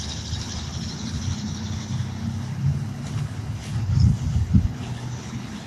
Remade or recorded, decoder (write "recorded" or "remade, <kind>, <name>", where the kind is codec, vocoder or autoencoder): remade, codec, HILCodec